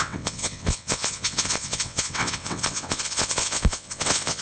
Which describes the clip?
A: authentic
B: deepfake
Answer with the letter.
B